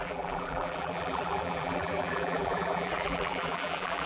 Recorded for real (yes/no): no